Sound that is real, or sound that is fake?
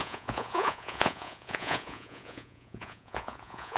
fake